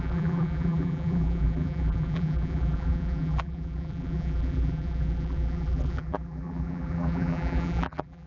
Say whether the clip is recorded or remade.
remade